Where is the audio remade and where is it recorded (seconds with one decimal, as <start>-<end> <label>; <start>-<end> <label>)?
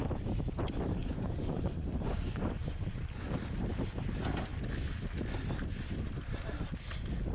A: 0.0-1.0 recorded; 1.0-3.0 remade; 3.0-7.3 recorded